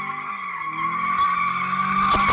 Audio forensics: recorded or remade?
recorded